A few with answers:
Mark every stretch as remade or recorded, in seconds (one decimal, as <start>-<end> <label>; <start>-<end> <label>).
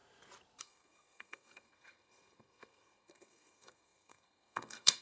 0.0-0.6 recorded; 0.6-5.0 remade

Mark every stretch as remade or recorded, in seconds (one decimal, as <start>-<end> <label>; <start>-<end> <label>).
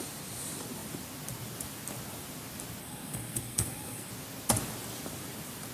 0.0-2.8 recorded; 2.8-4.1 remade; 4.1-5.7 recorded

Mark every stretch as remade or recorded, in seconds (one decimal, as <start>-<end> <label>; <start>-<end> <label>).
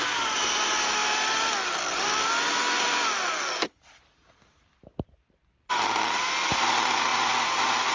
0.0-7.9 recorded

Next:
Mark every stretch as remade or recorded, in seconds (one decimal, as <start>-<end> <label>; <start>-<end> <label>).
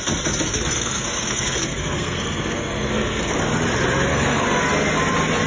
0.0-0.5 recorded; 0.5-3.4 remade; 3.4-4.1 recorded; 4.1-4.6 remade; 4.6-5.5 recorded